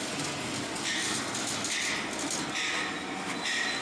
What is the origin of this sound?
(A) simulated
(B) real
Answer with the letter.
B